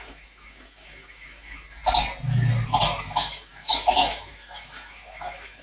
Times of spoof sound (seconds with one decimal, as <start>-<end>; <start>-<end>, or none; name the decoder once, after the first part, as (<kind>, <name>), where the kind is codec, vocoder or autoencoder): 0.0-1.8 (autoencoder, DAC-VAE); 3.0-5.6